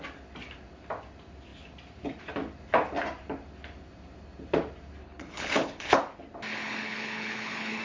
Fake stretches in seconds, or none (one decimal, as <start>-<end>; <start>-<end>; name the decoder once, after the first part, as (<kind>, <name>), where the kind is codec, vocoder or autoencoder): 5.0-6.0 (codec, HILCodec); 6.5-7.8